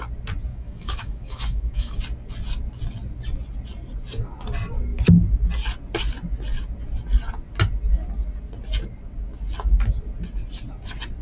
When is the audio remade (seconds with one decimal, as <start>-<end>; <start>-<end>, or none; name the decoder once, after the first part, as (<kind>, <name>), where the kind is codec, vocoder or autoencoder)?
0.5-2.0 (autoencoder, DAC-VAE)